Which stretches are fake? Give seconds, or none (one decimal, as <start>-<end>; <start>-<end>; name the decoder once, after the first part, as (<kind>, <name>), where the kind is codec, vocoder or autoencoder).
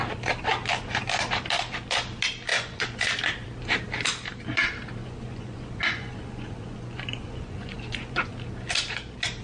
2.5-3.0 (vocoder, Vocos); 5.0-8.3